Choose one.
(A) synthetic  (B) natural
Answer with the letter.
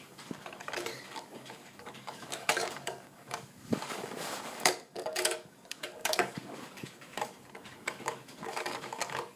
A